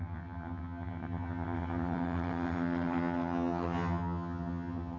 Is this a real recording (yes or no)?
no